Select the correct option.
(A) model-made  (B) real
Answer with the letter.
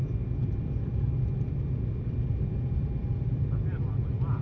B